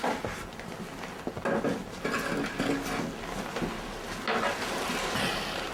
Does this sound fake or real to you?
real